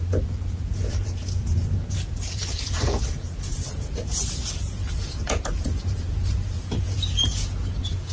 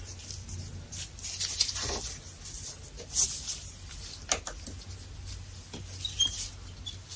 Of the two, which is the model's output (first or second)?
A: first